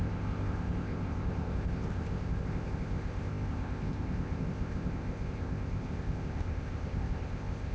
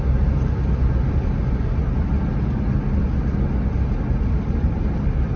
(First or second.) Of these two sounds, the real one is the second